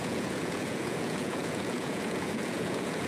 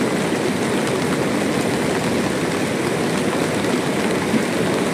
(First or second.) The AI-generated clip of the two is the first